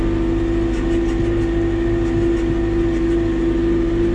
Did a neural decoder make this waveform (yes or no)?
no